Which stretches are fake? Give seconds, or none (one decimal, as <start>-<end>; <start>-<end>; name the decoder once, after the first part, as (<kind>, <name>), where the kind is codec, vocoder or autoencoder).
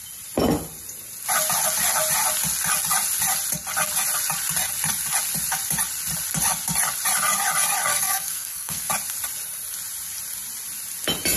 7.9-8.9 (codec, SNAC)